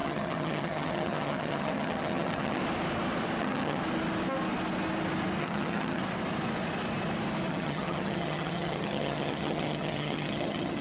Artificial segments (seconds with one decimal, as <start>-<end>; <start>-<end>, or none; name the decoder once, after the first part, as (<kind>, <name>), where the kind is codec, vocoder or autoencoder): 0.0-2.6 (vocoder, HiFi-GAN); 3.4-3.8; 5.4-6.0; 7.5-10.8